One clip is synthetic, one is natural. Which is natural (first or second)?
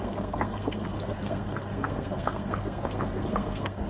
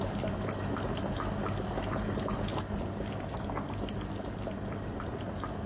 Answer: second